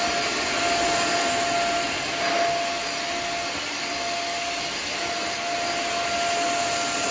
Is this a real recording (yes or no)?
yes